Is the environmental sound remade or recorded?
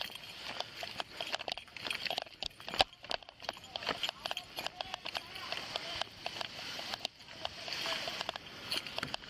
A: recorded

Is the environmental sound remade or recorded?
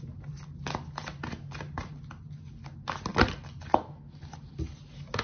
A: recorded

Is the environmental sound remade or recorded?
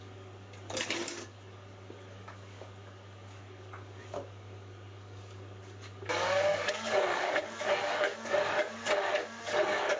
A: remade